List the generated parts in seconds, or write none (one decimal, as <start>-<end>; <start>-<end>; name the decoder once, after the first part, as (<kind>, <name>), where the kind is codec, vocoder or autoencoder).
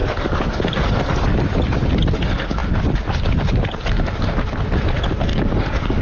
0.0-0.6 (codec, DAC); 5.3-6.0